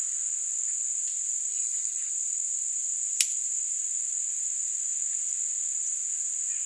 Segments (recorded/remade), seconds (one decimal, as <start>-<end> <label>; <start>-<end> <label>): 0.0-1.5 recorded; 1.5-2.1 remade; 2.1-6.7 recorded